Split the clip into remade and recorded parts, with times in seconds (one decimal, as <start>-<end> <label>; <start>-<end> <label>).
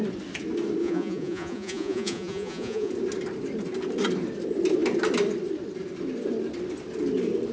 0.0-0.8 recorded; 0.8-2.9 remade; 2.9-7.5 recorded